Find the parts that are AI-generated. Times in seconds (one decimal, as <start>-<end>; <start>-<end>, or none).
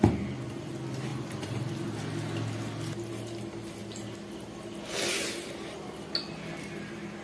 1.1-1.7